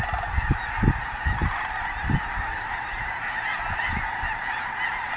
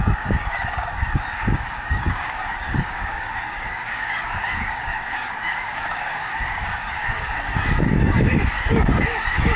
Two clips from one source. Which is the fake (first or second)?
second